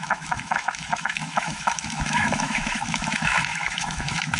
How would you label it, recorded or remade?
remade